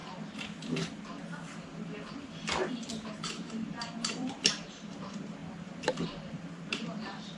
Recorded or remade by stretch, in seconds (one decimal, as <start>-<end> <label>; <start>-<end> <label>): 0.0-3.1 recorded; 3.1-5.4 remade; 5.4-6.7 recorded; 6.7-7.4 remade